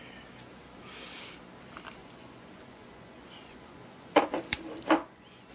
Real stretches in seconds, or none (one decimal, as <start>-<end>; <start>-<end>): 0.0-2.0; 4.2-5.0